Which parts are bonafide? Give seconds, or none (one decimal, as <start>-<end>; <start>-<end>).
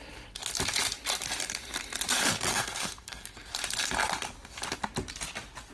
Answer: 0.0-2.5; 3.5-5.7